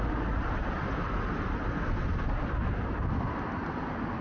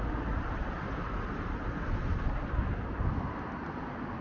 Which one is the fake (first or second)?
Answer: second